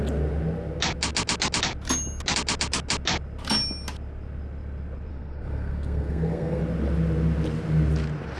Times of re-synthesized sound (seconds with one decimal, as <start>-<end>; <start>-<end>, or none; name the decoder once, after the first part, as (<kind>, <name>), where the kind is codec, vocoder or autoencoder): 5.1-6.6 (codec, SNAC)